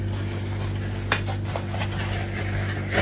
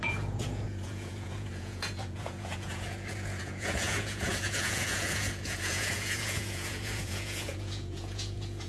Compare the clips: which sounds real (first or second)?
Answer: first